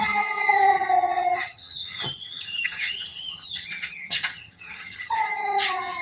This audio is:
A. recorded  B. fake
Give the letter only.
B